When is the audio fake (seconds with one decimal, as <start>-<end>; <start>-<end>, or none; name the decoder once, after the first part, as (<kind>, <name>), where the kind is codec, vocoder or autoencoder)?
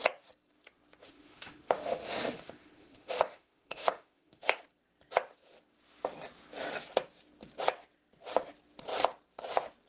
1.0-4.6 (autoencoder, DAC-VAE)